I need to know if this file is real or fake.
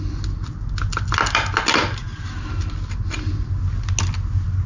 real